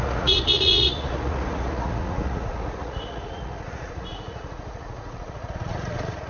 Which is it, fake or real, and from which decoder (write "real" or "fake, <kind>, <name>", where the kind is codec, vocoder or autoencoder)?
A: fake, vocoder, Vocos